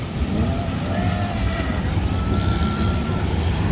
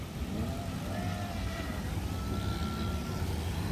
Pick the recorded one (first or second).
second